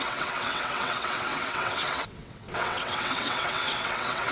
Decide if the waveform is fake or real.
fake